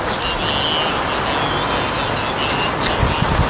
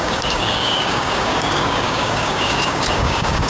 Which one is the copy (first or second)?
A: second